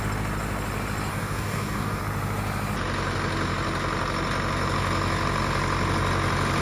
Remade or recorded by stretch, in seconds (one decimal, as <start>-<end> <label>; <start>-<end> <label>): 0.0-1.1 recorded; 1.1-2.0 remade; 2.0-6.6 recorded